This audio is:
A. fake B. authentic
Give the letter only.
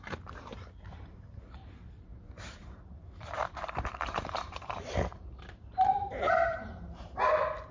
A